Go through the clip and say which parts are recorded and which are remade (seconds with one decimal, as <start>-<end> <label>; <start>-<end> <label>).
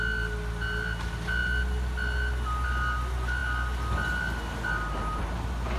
0.0-5.8 recorded